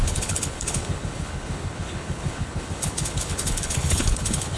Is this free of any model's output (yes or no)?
no